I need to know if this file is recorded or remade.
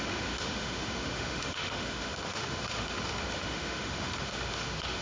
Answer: remade